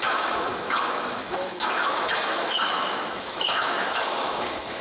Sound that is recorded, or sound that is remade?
remade